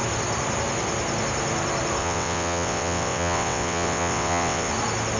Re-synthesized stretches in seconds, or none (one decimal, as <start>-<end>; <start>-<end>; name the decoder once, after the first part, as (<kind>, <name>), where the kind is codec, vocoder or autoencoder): 2.0-4.7 (vocoder, WaveNeXt)